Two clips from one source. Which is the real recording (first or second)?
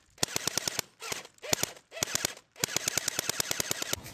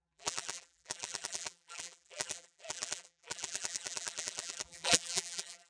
first